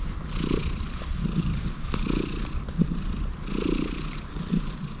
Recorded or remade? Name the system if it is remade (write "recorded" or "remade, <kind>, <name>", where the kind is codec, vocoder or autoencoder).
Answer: recorded